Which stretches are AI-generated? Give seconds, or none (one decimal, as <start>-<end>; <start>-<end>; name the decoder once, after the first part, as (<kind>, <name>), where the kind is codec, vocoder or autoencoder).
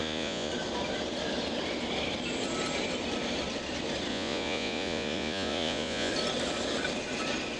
0.0-0.5 (vocoder, Vocos); 4.1-6.1